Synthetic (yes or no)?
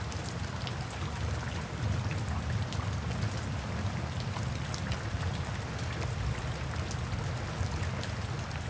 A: no